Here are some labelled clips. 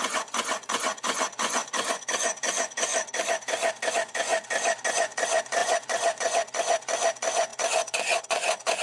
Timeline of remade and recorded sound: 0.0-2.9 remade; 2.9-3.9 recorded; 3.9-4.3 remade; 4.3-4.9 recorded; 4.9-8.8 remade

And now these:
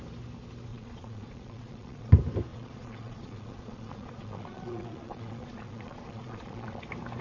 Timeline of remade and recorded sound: 0.0-0.7 recorded; 0.7-2.1 remade; 2.1-2.5 recorded; 2.5-6.8 remade; 6.8-7.2 recorded

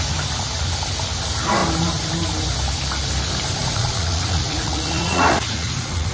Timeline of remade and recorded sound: 0.0-3.6 recorded; 3.6-6.1 remade

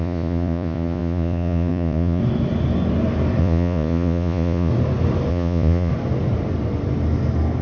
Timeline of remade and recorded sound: 0.0-2.2 remade; 2.2-3.4 recorded; 3.4-4.7 remade; 4.7-5.3 recorded; 5.3-5.9 remade; 5.9-7.6 recorded